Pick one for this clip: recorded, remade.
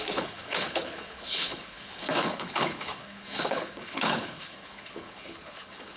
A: remade